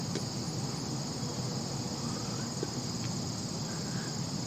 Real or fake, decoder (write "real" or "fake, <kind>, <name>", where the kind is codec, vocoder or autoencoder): real